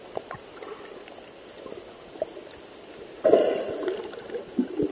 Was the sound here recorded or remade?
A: recorded